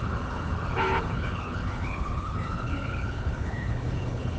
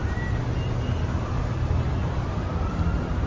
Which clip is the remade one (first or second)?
first